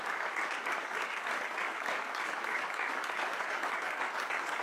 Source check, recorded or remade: remade